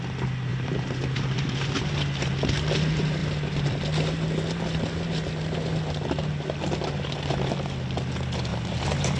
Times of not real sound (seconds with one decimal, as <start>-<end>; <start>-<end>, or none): 0.5-1.8; 8.5-9.2